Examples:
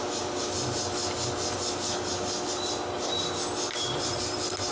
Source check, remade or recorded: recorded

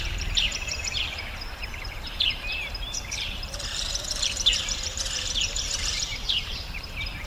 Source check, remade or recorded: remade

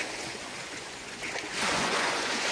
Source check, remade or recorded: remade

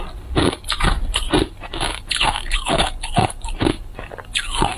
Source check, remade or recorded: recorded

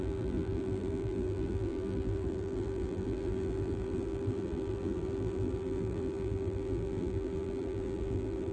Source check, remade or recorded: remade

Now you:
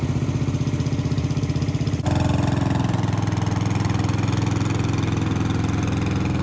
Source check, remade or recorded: recorded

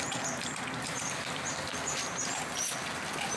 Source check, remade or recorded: recorded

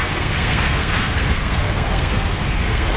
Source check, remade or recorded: remade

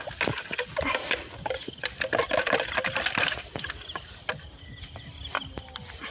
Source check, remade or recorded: recorded